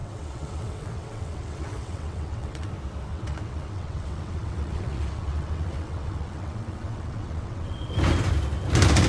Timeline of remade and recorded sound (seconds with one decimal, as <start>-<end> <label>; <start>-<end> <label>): 0.0-2.7 remade; 2.7-3.1 recorded; 3.1-7.9 remade; 7.9-9.1 recorded